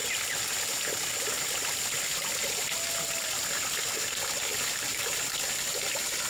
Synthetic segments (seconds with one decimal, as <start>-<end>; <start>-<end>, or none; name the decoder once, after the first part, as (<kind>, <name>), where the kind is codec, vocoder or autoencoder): 4.5-5.0 (vocoder, BigVGAN v2)